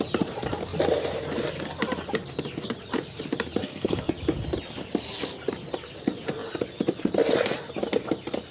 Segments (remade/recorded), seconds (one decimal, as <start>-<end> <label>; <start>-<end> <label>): 0.0-3.6 recorded; 3.6-4.1 remade; 4.1-8.5 recorded